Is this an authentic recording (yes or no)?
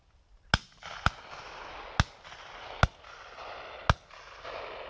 yes